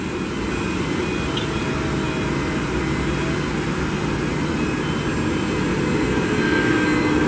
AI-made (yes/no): no